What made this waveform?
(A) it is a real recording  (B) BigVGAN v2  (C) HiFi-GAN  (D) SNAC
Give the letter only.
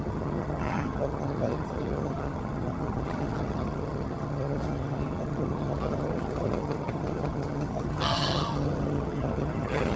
C